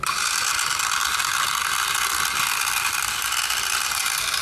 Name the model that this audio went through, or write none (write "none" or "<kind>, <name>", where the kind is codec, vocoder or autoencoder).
none